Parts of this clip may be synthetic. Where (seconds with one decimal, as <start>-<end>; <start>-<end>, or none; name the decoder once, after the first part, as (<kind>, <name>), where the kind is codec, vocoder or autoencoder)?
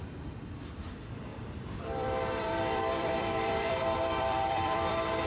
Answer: 0.0-5.3 (vocoder, BigVGAN v2)